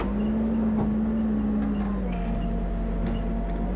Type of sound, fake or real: real